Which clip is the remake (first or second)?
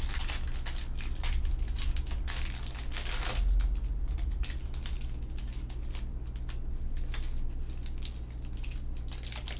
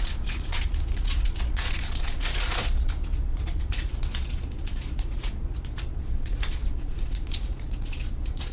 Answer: second